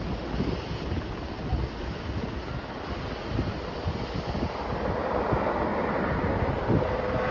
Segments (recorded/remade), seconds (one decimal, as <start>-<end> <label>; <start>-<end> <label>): 0.0-7.3 recorded